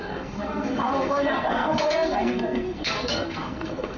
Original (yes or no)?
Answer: no